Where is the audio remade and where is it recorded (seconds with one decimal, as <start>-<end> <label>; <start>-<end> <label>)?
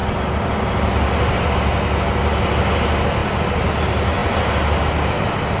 0.0-5.6 recorded